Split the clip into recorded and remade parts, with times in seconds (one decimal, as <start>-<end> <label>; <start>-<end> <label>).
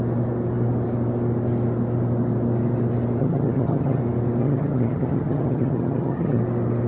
0.0-3.2 recorded; 3.2-4.0 remade; 4.0-4.4 recorded; 4.4-6.4 remade; 6.4-6.9 recorded